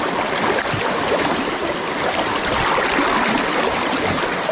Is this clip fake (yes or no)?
no